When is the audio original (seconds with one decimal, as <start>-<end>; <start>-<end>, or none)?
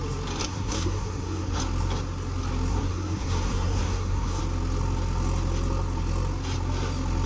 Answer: 0.0-0.4; 1.6-2.7; 4.4-7.3